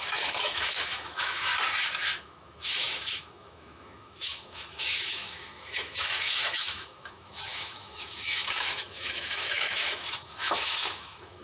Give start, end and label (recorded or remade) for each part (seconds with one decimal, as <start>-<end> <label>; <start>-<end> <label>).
0.0-1.5 remade; 1.5-2.2 recorded; 2.2-11.4 remade